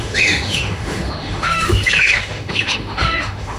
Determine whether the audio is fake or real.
fake